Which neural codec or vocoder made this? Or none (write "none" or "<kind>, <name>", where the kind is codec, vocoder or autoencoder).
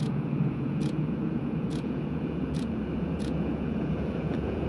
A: vocoder, Vocos